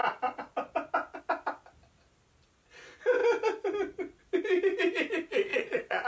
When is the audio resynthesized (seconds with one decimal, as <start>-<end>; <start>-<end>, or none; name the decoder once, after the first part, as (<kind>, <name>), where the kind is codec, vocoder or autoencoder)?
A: 5.5-6.1 (vocoder, Vocos)